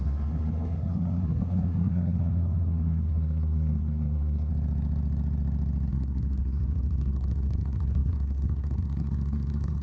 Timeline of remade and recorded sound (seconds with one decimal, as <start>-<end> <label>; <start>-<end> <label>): 0.0-4.5 remade; 4.5-5.9 recorded; 5.9-9.8 remade